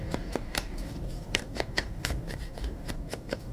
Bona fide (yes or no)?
no